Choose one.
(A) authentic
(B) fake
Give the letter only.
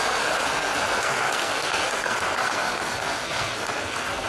B